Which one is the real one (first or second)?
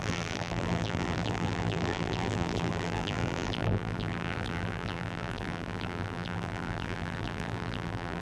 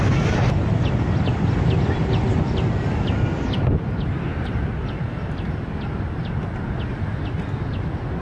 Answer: second